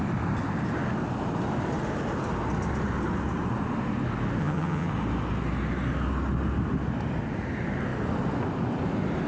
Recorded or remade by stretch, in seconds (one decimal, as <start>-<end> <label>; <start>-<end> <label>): 0.0-4.4 recorded; 4.4-4.9 remade; 4.9-9.3 recorded